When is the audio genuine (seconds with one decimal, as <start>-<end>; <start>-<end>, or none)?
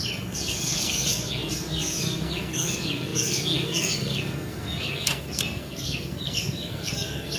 none